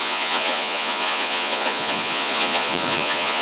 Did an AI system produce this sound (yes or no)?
yes